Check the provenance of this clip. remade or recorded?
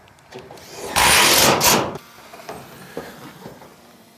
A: recorded